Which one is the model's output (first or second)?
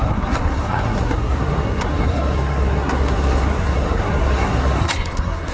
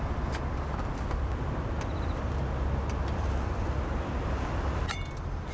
first